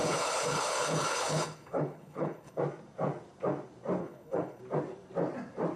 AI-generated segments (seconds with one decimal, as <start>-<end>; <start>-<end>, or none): 0.0-2.6; 4.0-4.6